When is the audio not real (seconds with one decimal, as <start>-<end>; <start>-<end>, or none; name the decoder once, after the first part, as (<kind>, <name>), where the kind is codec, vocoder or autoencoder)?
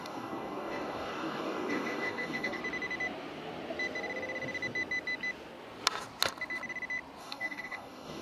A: 0.0-2.6 (codec, DAC); 7.2-8.2